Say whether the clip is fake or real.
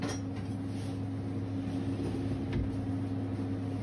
real